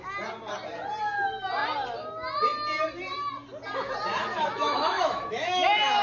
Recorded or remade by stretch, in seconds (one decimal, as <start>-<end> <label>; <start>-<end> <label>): 0.0-4.2 recorded; 4.2-6.0 remade

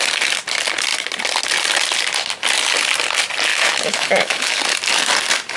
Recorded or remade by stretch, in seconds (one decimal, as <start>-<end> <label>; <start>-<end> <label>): 0.0-3.5 recorded; 3.5-4.6 remade; 4.6-5.6 recorded